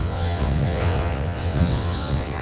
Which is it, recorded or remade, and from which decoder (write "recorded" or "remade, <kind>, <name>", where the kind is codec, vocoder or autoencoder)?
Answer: remade, vocoder, WaveNeXt